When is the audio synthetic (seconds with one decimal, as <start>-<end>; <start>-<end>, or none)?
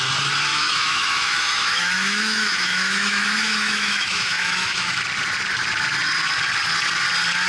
0.5-5.0